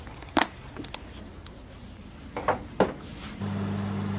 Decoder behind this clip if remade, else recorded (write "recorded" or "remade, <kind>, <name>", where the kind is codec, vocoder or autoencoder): recorded